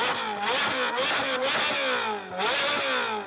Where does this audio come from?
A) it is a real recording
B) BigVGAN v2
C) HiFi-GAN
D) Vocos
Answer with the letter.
A